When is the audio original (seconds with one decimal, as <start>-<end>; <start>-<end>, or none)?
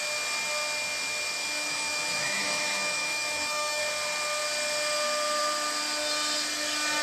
0.0-1.4; 3.8-7.0